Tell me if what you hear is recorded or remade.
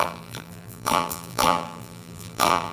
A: remade